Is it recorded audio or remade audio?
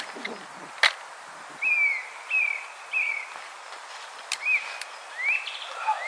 recorded